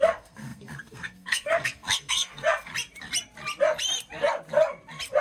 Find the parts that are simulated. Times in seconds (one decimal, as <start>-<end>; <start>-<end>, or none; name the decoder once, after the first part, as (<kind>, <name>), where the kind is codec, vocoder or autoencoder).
0.0-2.7 (codec, SNAC)